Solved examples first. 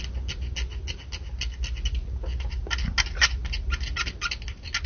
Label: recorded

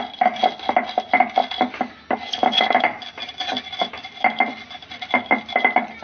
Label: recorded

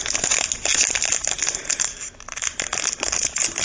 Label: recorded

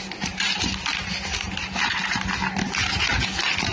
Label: recorded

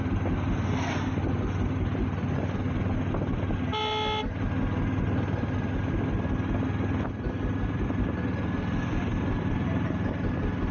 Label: recorded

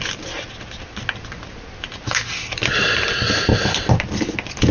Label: recorded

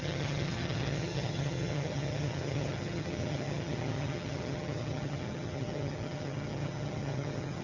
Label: remade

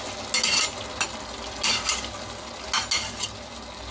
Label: recorded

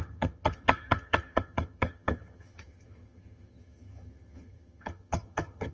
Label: remade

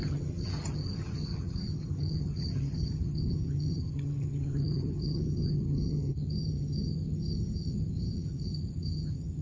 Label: remade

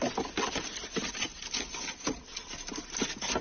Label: recorded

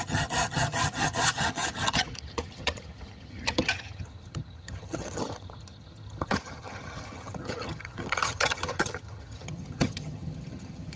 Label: remade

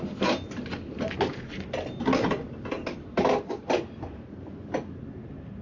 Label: recorded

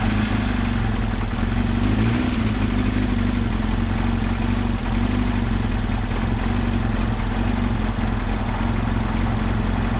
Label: recorded